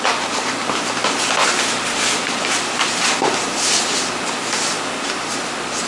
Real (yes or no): yes